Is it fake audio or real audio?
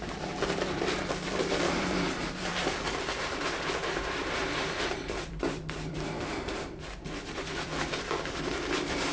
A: fake